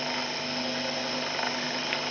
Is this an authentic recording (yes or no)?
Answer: yes